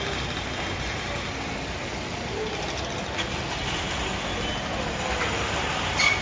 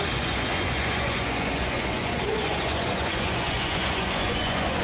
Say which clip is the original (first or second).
first